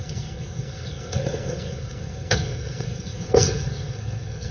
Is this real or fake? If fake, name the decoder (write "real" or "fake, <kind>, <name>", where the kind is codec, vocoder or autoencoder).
fake, codec, SNAC